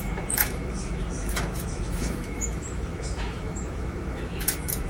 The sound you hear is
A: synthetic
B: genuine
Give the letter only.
A